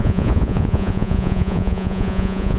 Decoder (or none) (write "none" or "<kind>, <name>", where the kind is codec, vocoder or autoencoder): vocoder, Vocos